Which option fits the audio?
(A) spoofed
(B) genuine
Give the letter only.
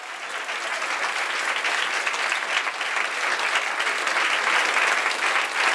B